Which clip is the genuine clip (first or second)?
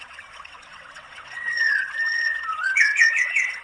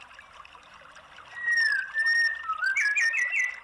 second